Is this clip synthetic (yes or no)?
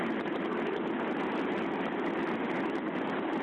no